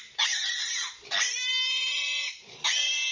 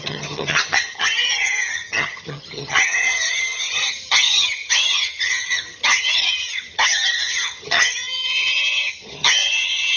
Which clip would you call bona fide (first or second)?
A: first